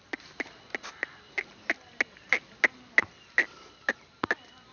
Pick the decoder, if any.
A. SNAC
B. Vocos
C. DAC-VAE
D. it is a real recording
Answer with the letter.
D